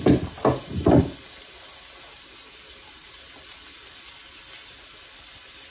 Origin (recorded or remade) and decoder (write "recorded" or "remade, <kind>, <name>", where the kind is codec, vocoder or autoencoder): recorded